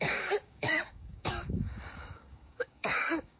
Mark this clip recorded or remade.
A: remade